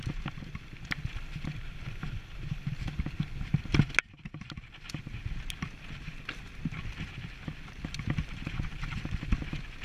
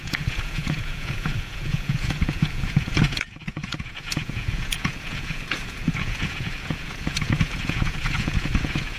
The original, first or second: first